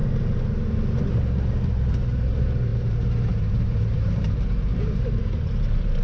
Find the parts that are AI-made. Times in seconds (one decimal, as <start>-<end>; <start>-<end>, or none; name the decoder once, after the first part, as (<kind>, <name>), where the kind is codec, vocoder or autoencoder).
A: 1.6-6.0 (vocoder, BigVGAN v2)